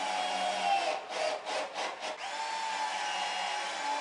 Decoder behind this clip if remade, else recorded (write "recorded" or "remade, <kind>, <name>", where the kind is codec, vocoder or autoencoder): recorded